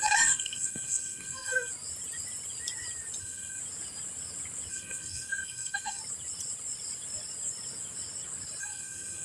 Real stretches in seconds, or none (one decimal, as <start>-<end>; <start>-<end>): 1.7-3.2; 3.6-4.7; 6.0-8.6